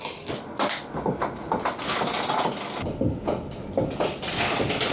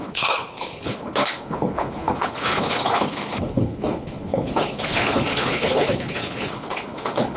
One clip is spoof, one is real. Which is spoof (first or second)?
second